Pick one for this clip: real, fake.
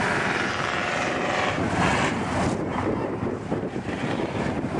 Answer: fake